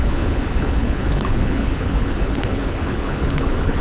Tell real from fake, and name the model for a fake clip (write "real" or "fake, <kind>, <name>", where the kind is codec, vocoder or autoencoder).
fake, codec, HILCodec